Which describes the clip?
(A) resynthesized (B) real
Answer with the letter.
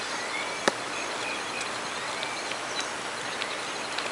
A